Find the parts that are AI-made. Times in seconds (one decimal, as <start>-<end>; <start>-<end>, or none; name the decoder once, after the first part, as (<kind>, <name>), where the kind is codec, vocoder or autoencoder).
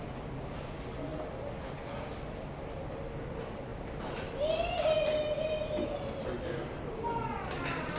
none